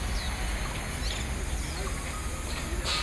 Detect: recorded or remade recorded